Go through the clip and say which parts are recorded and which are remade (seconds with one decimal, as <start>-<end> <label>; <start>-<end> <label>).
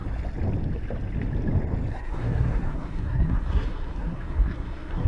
0.0-1.9 recorded; 1.9-5.1 remade